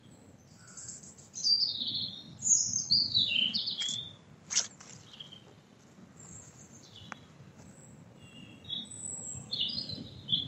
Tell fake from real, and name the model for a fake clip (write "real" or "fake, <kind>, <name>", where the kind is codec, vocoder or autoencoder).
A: real